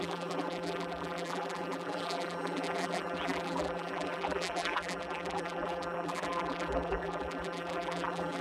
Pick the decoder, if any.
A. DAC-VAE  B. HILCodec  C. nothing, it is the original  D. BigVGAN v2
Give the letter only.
D